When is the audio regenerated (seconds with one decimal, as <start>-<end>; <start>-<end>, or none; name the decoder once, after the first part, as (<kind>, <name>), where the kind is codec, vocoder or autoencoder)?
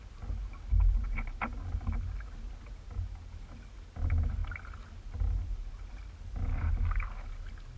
6.5-7.2 (codec, DAC)